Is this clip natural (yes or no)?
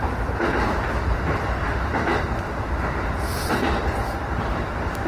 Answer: no